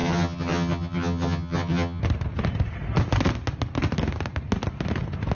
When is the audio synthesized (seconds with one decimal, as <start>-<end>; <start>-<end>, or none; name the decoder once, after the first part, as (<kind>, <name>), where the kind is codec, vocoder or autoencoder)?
0.0-2.0 (vocoder, HiFi-GAN)

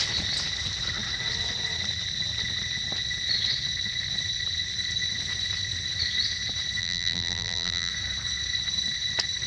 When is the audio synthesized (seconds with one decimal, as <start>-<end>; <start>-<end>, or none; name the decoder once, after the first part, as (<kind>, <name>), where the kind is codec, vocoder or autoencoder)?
6.8-7.9 (vocoder, BigVGAN v2)